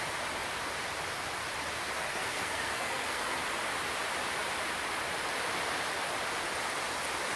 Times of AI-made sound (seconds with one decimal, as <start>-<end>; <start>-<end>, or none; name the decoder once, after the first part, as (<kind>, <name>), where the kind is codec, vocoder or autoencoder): 2.0-3.4 (codec, SNAC)